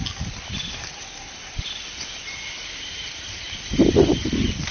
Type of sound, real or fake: real